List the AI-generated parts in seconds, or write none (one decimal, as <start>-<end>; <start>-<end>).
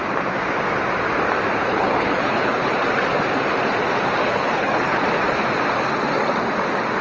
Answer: 1.6-2.7; 4.2-5.0